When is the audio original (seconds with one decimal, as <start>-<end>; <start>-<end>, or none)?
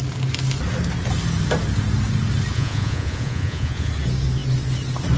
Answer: 0.0-2.5; 3.9-5.2